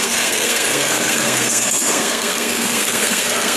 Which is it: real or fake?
fake